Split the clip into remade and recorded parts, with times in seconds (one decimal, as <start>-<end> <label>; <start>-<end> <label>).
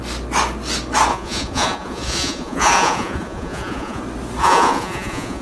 0.0-1.1 recorded; 1.1-4.0 remade; 4.0-4.4 recorded; 4.4-5.4 remade